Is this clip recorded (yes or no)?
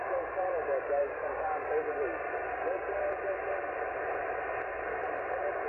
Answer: yes